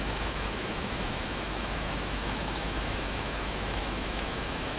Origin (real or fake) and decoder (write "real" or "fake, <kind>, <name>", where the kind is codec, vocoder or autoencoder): fake, autoencoder, DAC-VAE